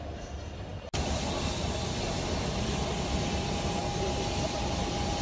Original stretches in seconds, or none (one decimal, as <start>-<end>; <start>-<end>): 0.0-5.2